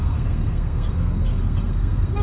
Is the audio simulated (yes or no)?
yes